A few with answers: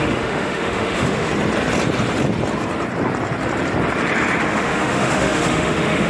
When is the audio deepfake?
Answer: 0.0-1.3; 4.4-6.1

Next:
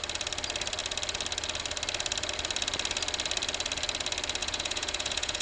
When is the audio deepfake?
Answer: 4.4-5.4

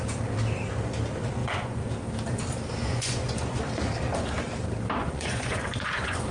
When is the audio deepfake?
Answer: 1.4-1.9; 2.8-3.6; 5.0-6.3

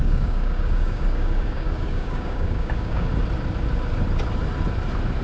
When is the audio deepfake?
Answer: 0.0-3.1